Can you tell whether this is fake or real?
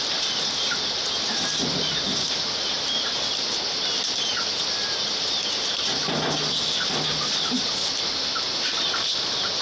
real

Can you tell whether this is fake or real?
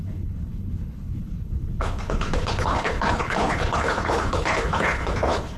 fake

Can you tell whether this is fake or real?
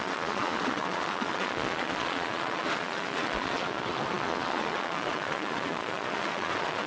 fake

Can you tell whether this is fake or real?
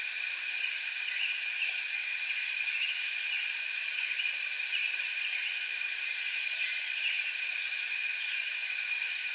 fake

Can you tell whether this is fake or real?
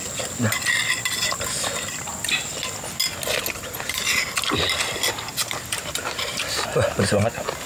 real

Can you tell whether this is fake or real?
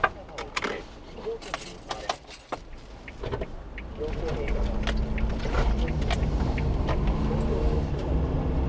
real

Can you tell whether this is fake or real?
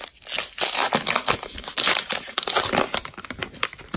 real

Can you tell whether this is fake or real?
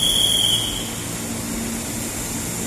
real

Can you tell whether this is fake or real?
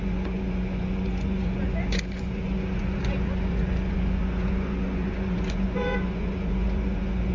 fake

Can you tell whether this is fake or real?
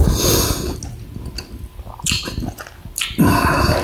real